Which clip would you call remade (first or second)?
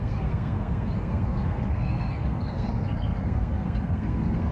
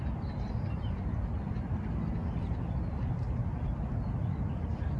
first